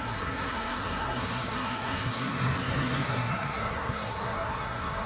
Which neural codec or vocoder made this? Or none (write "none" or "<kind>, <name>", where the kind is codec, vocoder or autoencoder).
codec, SNAC